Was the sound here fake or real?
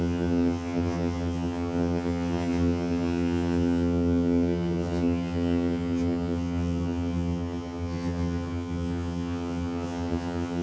fake